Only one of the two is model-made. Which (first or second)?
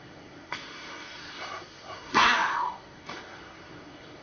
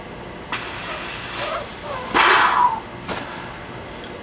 first